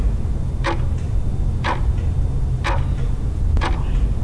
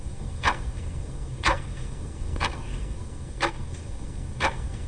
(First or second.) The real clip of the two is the first